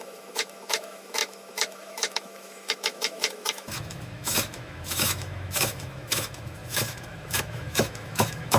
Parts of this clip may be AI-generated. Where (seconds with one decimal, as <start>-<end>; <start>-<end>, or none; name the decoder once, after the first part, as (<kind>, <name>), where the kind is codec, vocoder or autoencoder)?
0.0-8.6 (autoencoder, DAC-VAE)